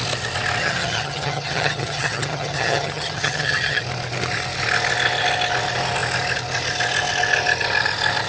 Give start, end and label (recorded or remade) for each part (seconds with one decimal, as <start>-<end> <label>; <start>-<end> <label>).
0.0-0.6 recorded; 0.6-3.8 remade; 3.8-8.3 recorded